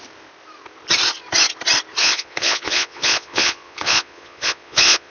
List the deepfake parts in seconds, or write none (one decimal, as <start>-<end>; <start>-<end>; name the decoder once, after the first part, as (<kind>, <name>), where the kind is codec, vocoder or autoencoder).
2.0-5.1 (vocoder, Vocos)